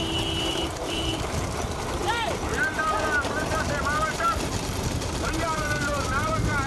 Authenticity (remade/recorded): remade